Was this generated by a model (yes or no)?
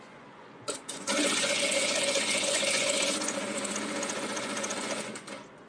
yes